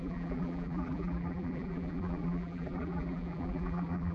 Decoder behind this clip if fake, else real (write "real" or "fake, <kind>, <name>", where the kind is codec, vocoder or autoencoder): fake, vocoder, BigVGAN v2